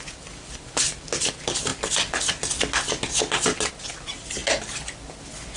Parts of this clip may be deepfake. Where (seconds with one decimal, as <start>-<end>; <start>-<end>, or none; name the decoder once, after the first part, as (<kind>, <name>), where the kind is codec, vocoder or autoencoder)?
none

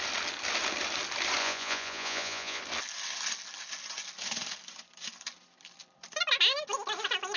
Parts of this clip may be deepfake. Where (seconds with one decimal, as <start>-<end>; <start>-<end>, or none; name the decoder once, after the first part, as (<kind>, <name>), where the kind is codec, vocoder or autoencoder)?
1.4-2.6 (vocoder, Vocos)

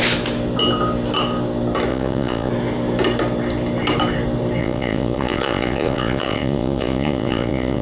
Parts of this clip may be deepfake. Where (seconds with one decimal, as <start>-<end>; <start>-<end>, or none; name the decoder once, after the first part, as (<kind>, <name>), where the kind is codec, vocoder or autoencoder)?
1.9-2.5 (vocoder, Vocos); 4.6-7.8

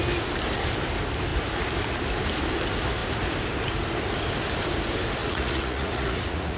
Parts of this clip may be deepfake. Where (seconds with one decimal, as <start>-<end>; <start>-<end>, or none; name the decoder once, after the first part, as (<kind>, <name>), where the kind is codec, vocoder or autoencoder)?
5.2-6.6 (vocoder, Vocos)

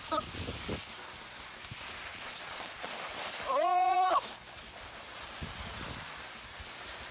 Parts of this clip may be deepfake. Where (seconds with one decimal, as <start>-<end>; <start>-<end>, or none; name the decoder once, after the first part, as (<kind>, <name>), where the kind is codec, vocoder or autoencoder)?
2.1-2.9 (vocoder, Vocos); 3.5-4.1